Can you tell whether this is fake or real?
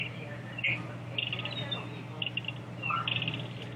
real